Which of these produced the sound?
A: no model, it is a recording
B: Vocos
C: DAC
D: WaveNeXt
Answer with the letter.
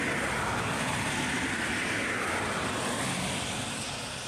A